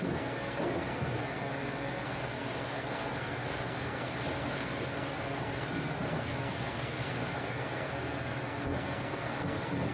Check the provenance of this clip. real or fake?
fake